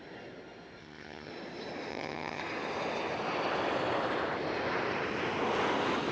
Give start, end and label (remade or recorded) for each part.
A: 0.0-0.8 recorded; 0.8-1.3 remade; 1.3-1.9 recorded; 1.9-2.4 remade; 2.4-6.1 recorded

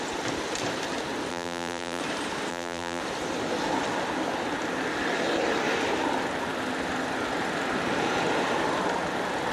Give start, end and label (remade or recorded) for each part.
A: 0.0-1.3 recorded; 1.3-2.0 remade; 2.0-2.5 recorded; 2.5-3.0 remade; 3.0-9.5 recorded

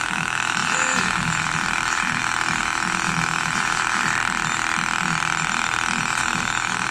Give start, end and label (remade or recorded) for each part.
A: 0.0-4.0 remade; 4.0-6.2 recorded; 6.2-6.9 remade

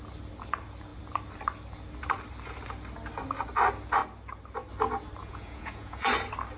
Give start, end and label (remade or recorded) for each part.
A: 0.0-5.2 recorded; 5.2-6.1 remade; 6.1-6.6 recorded

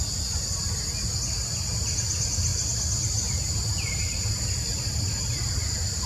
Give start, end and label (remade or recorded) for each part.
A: 0.0-6.1 recorded

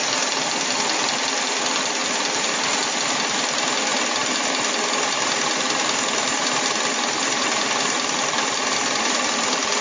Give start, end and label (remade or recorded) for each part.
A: 0.0-9.8 recorded